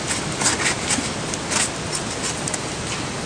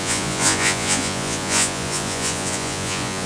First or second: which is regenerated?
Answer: second